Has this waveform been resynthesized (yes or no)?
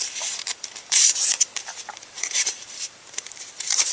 yes